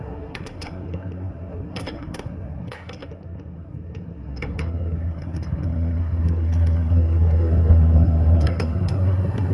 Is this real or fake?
fake